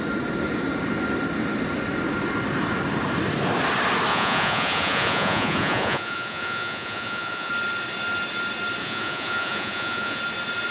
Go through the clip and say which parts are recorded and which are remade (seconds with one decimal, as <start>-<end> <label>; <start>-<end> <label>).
0.0-4.1 recorded; 4.1-7.5 remade; 7.5-8.8 recorded; 8.8-10.2 remade; 10.2-10.7 recorded